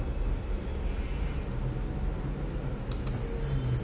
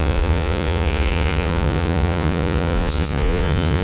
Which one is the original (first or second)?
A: first